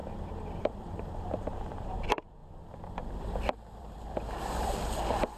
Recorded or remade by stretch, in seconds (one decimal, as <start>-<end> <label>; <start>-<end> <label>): 0.0-0.6 recorded; 0.6-2.4 remade; 2.4-3.1 recorded; 3.1-5.4 remade